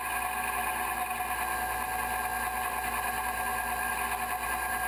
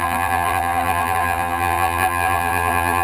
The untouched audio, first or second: first